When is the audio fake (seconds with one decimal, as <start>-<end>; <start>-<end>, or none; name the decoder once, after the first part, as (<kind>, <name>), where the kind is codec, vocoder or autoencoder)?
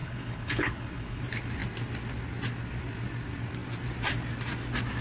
0.0-1.2 (codec, HILCodec)